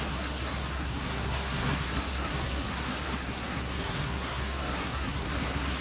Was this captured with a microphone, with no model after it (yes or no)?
no